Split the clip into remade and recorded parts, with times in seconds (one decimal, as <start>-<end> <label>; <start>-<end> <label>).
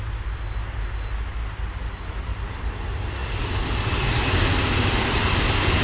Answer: 0.0-5.8 recorded